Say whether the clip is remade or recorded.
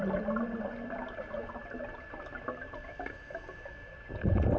recorded